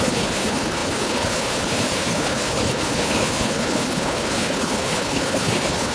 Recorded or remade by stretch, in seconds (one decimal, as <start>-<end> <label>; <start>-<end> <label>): 0.0-5.9 remade